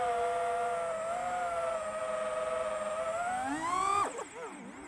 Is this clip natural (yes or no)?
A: yes